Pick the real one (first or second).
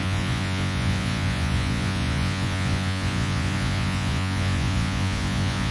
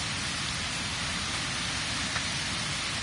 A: second